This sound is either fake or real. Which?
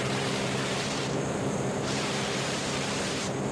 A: fake